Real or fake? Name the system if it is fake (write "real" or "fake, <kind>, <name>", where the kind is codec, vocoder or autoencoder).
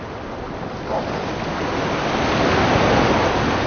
real